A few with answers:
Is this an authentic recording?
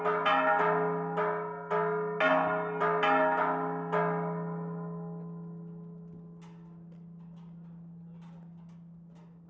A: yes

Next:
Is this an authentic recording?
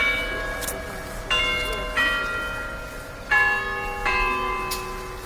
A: yes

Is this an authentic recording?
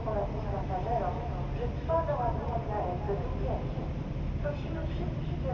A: yes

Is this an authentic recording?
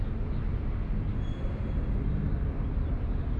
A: yes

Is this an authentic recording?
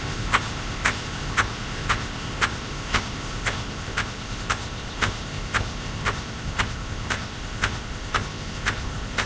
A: no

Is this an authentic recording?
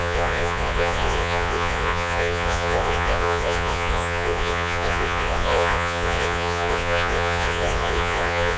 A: no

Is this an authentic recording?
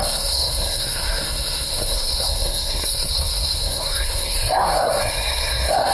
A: no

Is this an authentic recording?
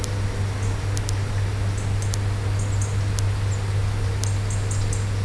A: yes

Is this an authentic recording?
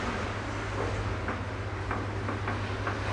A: yes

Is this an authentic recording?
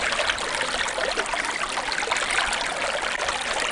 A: yes